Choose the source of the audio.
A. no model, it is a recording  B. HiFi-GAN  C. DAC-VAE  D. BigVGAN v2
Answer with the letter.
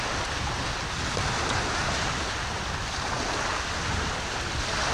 A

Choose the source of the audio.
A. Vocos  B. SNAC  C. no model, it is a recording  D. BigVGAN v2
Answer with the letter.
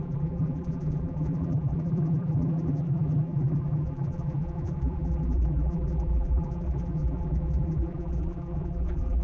D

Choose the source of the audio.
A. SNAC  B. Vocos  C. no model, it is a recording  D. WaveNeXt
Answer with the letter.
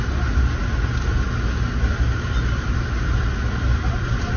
C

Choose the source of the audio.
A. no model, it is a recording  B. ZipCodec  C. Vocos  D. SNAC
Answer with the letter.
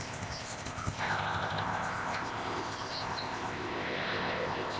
B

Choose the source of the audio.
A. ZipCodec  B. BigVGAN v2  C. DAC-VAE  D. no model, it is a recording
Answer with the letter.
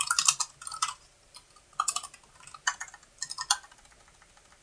D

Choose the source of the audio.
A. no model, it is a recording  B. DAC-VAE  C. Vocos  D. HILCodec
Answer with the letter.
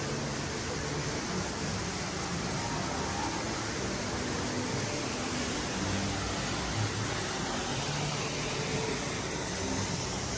A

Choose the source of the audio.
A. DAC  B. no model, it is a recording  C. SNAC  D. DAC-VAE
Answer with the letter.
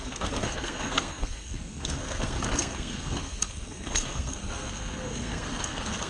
C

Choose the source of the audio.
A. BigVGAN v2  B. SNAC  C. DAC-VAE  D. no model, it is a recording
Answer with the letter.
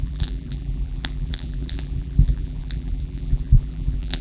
A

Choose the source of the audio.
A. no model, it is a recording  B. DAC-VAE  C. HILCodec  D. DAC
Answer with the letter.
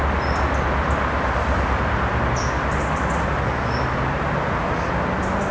A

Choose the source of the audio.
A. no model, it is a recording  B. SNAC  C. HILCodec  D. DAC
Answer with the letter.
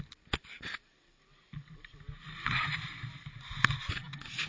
A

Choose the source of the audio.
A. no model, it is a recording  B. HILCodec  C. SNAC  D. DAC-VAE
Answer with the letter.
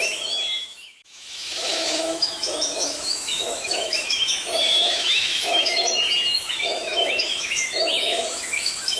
D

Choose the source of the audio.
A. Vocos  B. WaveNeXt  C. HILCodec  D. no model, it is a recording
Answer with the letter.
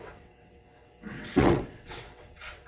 B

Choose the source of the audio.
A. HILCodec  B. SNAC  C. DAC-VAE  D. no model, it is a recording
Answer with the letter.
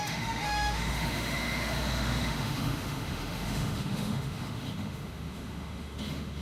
C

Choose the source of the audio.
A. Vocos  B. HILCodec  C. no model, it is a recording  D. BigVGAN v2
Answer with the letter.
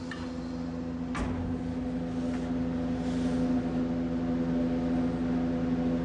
C